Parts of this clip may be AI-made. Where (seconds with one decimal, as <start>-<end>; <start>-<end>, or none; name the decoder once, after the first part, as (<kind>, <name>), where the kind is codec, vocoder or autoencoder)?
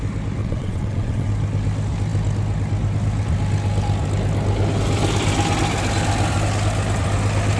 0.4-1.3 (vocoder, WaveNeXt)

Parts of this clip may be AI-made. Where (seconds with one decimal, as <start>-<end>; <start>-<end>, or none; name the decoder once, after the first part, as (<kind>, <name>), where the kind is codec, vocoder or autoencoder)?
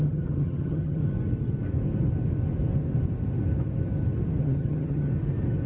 0.0-1.0 (vocoder, HiFi-GAN); 4.4-5.1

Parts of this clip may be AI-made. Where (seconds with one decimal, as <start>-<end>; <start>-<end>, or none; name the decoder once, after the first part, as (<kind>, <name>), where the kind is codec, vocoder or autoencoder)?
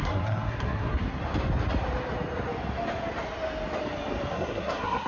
0.0-1.2 (codec, SNAC); 4.3-5.1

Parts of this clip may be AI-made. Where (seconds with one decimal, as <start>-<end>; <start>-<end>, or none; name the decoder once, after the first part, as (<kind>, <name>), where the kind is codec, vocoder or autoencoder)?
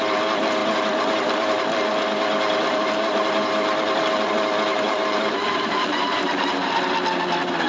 0.6-4.3 (vocoder, BigVGAN v2); 4.7-6.7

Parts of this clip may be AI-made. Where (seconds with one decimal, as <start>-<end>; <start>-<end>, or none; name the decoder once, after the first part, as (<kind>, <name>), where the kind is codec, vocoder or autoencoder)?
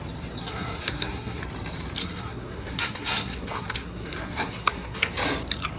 0.4-1.4 (codec, SNAC); 2.0-5.1